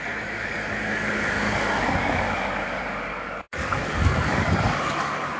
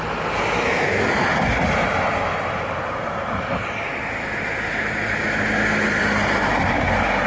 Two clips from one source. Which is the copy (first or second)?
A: first